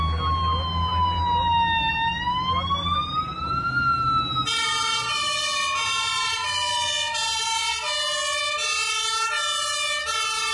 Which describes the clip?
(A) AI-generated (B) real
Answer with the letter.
B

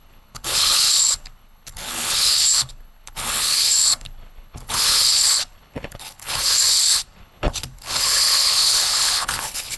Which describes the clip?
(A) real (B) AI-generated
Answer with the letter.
B